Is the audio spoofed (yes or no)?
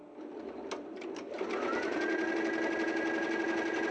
no